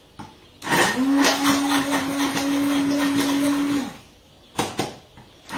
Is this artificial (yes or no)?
no